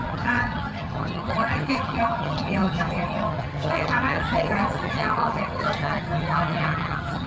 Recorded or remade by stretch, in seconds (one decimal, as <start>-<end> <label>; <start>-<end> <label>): 0.0-7.3 remade